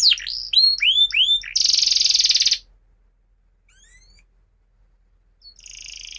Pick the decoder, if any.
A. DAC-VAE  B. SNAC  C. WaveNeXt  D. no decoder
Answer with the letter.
D